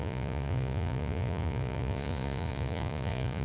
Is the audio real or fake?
fake